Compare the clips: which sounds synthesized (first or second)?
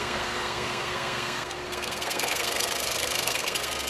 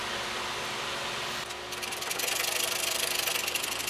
first